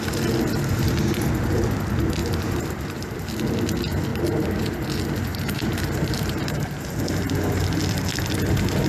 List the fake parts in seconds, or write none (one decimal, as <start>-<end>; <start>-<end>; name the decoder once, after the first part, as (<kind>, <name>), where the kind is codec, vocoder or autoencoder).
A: 2.2-3.3 (vocoder, BigVGAN v2); 4.1-4.8; 5.3-7.0